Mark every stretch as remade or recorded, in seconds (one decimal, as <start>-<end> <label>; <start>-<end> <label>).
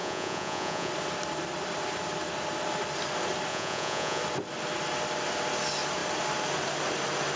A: 0.0-0.9 remade; 0.9-3.5 recorded; 3.5-4.2 remade; 4.2-7.4 recorded